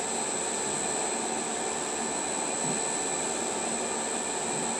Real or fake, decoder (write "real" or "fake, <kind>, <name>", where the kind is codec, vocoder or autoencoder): real